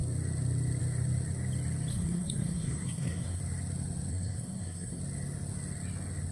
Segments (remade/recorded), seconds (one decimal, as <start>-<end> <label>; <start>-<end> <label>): 0.0-1.9 recorded; 1.9-3.4 remade; 3.4-4.1 recorded; 4.1-5.0 remade; 5.0-6.3 recorded